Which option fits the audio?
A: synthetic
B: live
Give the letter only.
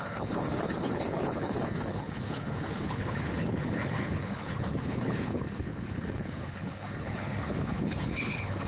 A